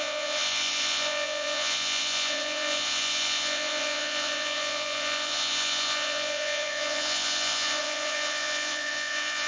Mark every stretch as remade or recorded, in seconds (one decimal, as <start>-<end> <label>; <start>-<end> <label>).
0.0-9.5 remade